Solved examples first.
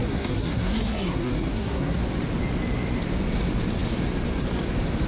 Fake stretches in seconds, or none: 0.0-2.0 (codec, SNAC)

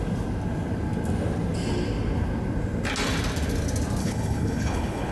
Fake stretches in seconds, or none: 4.0-5.1 (codec, HILCodec)

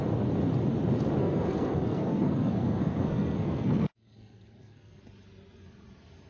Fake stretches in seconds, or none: 1.2-5.0 (codec, SNAC)

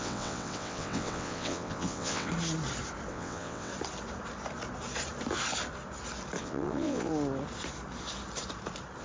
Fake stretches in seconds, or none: 0.0-2.3 (vocoder, WaveNeXt); 3.1-3.7; 6.4-7.1

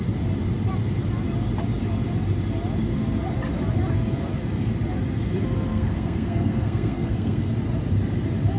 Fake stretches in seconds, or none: 5.7-7.5 (codec, SNAC)

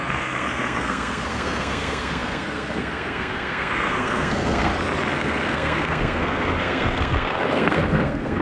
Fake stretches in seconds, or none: 0.0-4.7 (codec, SNAC); 5.2-8.4

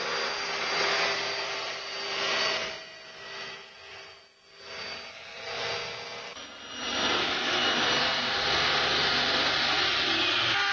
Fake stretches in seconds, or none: 7.2-7.8 (autoencoder, DAC-VAE)